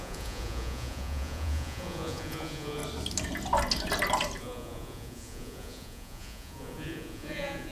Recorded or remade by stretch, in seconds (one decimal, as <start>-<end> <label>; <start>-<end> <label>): 0.0-2.8 remade; 2.8-4.4 recorded; 4.4-7.7 remade